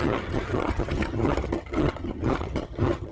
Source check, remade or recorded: remade